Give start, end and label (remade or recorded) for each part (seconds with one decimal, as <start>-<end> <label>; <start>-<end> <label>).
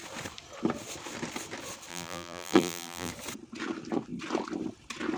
0.0-1.9 recorded; 1.9-3.1 remade; 3.1-5.2 recorded